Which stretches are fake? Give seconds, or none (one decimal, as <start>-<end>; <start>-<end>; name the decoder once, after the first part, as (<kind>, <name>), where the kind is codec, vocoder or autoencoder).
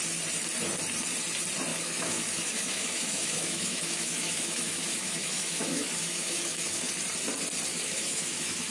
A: 1.7-6.9 (autoencoder, DAC-VAE); 7.7-8.7